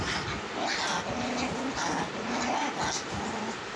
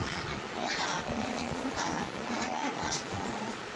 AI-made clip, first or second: second